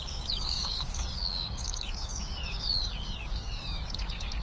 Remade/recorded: remade